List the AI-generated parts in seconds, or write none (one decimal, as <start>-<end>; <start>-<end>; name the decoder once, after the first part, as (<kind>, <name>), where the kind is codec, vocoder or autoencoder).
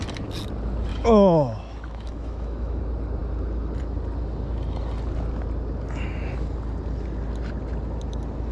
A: 0.9-2.8 (autoencoder, DAC-VAE)